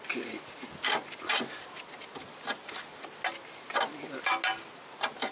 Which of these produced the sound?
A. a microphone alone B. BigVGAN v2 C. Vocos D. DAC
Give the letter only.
A